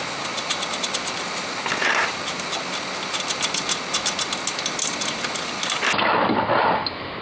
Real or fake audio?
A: real